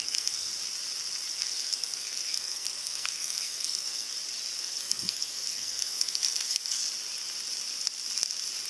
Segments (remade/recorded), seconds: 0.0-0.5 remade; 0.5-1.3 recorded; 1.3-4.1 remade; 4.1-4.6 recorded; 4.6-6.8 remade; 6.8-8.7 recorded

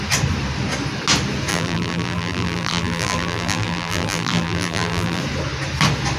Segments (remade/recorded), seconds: 0.0-1.5 recorded; 1.5-5.2 remade; 5.2-6.2 recorded